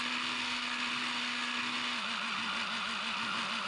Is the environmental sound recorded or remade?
recorded